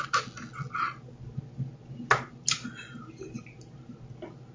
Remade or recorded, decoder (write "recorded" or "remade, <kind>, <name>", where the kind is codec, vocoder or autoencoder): recorded